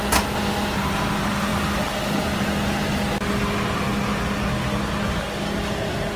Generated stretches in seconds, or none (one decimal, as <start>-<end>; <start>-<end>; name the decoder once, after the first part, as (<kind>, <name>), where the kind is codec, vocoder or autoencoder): none